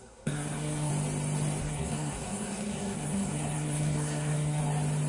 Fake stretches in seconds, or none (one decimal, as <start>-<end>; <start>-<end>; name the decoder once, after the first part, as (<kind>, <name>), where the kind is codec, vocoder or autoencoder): 0.0-0.9 (codec, SNAC); 1.6-4.6